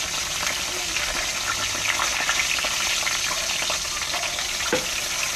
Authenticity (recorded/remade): recorded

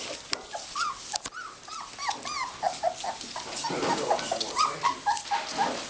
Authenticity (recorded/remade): recorded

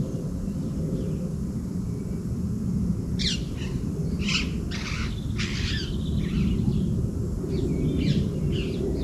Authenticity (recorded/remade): recorded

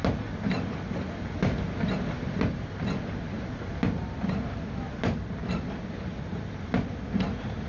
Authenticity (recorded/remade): recorded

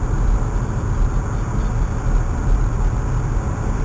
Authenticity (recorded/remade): recorded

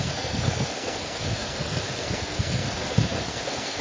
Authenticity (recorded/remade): remade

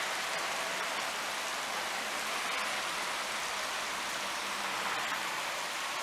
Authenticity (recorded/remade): recorded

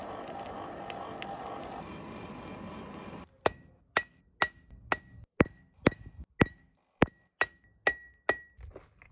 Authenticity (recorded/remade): recorded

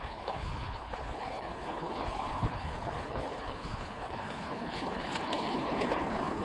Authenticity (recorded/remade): remade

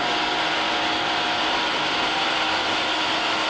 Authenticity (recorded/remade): recorded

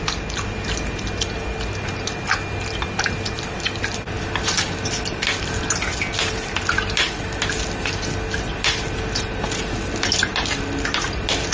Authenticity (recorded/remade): recorded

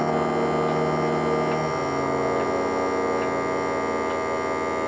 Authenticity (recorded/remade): recorded